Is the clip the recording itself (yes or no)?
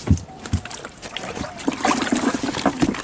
yes